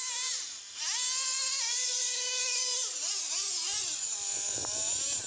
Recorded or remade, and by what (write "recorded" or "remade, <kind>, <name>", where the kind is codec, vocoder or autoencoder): recorded